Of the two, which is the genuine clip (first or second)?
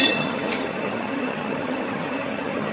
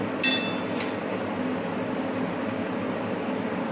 second